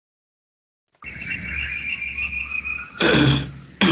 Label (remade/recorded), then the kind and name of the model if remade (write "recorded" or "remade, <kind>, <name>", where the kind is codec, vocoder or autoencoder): recorded